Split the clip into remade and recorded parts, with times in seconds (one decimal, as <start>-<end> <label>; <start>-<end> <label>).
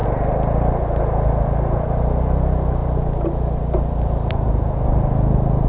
0.0-5.7 recorded